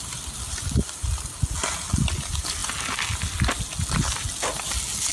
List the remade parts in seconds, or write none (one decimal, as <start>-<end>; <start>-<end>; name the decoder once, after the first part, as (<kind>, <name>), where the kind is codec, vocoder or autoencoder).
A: none